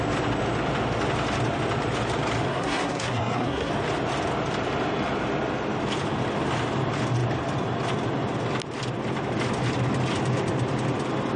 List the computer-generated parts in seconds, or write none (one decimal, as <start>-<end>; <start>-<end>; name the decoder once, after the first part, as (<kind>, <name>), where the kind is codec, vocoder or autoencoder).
2.5-3.7 (codec, SNAC)